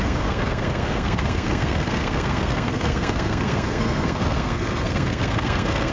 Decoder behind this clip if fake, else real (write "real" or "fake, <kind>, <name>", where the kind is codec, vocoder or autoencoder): fake, codec, SNAC